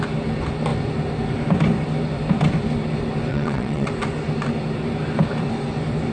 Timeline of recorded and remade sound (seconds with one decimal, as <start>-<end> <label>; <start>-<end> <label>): 0.0-3.3 recorded; 3.3-3.9 remade; 3.9-6.1 recorded